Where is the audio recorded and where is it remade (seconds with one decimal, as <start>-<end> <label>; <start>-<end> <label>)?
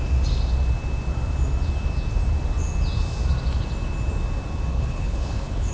0.0-4.7 recorded; 4.7-5.7 remade